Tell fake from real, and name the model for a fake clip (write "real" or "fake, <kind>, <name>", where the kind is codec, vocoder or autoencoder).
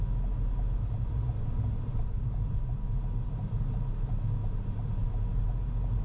real